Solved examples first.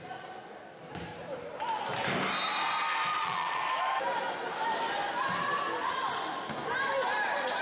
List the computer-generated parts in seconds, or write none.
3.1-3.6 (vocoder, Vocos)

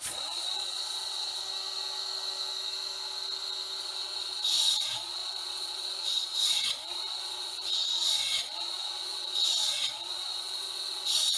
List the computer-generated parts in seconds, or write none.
0.0-1.4 (vocoder, Vocos); 3.8-11.4

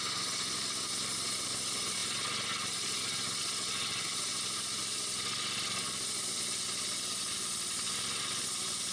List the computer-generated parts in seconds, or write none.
none